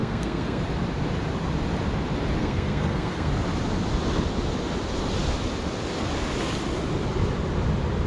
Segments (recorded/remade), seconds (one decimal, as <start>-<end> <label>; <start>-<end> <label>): 0.0-0.6 remade; 0.6-2.4 recorded; 2.4-3.3 remade; 3.3-8.1 recorded

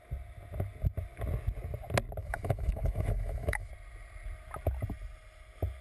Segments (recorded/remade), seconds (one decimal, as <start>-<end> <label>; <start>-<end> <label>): 0.0-2.2 recorded; 2.2-3.7 remade; 3.7-5.8 recorded

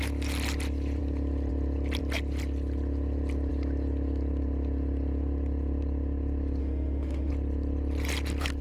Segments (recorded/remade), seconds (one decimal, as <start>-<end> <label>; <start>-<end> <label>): 0.0-6.6 recorded; 6.6-7.3 remade; 7.3-8.6 recorded

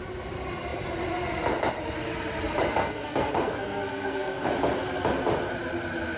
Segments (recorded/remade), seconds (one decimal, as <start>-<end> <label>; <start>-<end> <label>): 0.0-2.8 recorded; 2.8-4.5 remade; 4.5-6.2 recorded

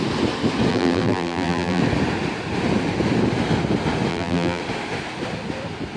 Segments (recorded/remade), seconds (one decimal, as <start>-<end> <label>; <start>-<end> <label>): 0.0-0.7 recorded; 0.7-1.8 remade; 1.8-4.1 recorded; 4.1-4.6 remade; 4.6-6.0 recorded

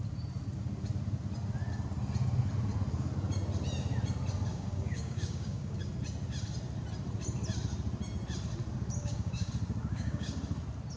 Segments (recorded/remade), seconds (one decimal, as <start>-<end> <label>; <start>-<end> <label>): 0.0-4.5 recorded; 4.5-5.9 remade; 5.9-9.0 recorded; 9.0-9.5 remade; 9.5-9.9 recorded; 9.9-10.4 remade; 10.4-11.0 recorded

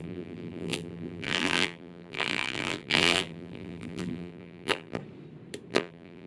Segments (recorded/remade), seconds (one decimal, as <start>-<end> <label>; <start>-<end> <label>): 0.0-5.0 remade; 5.0-5.7 recorded; 5.7-6.3 remade